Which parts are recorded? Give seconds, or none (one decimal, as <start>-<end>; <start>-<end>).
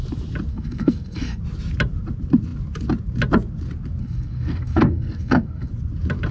0.0-0.5; 1.4-4.0; 5.7-6.3